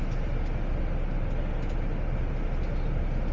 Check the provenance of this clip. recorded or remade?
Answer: recorded